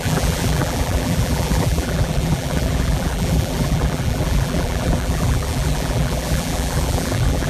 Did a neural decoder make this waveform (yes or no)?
yes